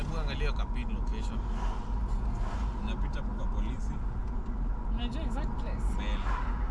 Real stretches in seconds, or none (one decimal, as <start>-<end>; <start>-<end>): 0.0-6.7